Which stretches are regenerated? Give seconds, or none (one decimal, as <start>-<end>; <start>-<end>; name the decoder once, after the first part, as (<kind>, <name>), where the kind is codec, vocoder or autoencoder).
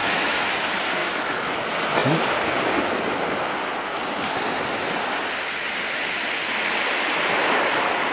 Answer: 0.0-0.5 (autoencoder, DAC-VAE); 1.0-1.5